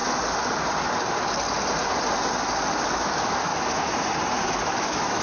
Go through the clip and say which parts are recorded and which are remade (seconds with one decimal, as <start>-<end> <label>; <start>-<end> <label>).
0.0-2.9 recorded; 2.9-3.5 remade; 3.5-4.6 recorded; 4.6-5.2 remade